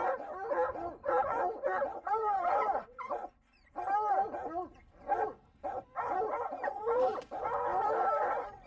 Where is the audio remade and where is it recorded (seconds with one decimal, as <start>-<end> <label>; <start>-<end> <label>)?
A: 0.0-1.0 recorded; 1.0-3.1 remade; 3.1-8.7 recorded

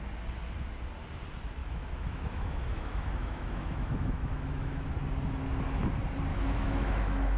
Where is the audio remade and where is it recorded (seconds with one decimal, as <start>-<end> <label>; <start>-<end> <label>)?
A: 0.0-1.6 recorded; 1.6-4.9 remade; 4.9-6.3 recorded; 6.3-7.4 remade

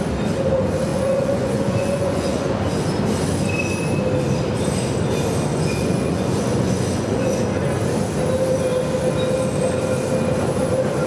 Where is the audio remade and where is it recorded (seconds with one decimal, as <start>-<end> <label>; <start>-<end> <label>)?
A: 0.0-0.9 recorded; 0.9-2.5 remade; 2.5-5.5 recorded; 5.5-7.4 remade; 7.4-11.1 recorded

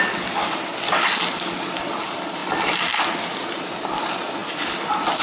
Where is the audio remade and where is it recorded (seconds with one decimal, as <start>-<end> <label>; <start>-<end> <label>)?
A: 0.0-5.2 recorded

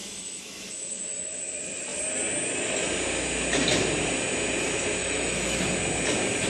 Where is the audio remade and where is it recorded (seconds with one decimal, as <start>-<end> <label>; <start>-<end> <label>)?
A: 0.0-1.4 remade; 1.4-5.0 recorded; 5.0-5.6 remade; 5.6-6.5 recorded

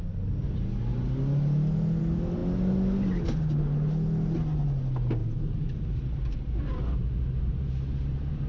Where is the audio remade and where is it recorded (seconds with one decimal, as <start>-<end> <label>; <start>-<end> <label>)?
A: 0.0-8.5 recorded

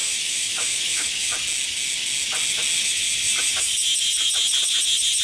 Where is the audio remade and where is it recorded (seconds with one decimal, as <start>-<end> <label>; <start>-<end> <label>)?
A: 0.0-1.3 remade; 1.3-5.2 recorded

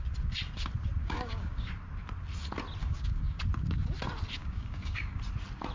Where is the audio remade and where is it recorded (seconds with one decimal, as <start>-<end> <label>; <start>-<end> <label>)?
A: 0.0-1.0 recorded; 1.0-1.7 remade; 1.7-2.8 recorded; 2.8-3.4 remade; 3.4-4.4 recorded; 4.4-5.2 remade; 5.2-5.7 recorded